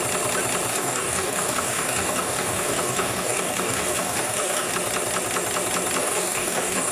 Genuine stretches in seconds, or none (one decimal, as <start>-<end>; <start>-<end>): 0.0-0.7; 4.7-6.0